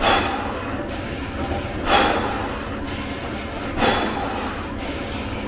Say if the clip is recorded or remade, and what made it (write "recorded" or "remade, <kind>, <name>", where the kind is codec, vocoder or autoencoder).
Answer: recorded